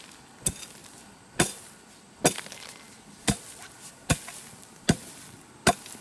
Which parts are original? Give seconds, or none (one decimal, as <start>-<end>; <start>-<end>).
0.0-6.0

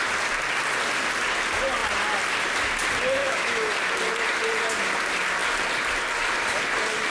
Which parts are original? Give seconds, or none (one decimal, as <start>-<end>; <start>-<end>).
0.0-3.2; 3.7-7.1

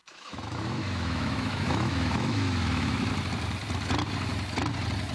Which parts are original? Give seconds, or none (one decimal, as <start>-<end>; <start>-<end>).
3.1-5.1

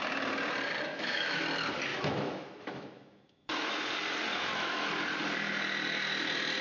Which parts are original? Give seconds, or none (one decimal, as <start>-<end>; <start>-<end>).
0.0-0.9; 1.4-1.9; 3.8-4.3; 4.9-6.6

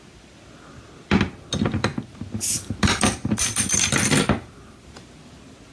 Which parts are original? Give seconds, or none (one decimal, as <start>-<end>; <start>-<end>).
0.0-5.7

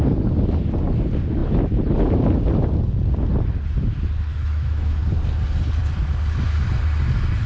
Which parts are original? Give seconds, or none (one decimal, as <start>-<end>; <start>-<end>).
0.0-4.3; 5.0-7.5